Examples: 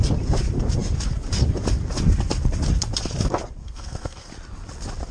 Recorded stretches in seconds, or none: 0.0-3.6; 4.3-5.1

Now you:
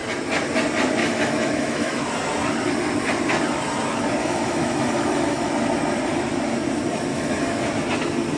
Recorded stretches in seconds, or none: 0.0-1.0; 2.0-4.2; 5.5-7.1; 7.7-8.4

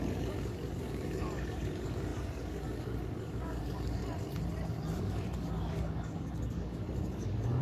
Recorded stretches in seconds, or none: 4.0-5.0